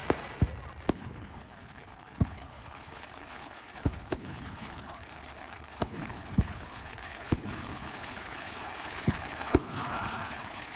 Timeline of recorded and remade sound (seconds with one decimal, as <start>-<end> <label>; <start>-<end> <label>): 0.0-0.9 recorded; 0.9-10.8 remade